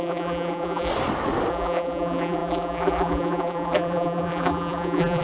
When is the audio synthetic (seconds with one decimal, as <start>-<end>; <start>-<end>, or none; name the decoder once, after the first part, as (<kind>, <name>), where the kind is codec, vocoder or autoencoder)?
0.0-0.9 (vocoder, BigVGAN v2); 1.5-5.2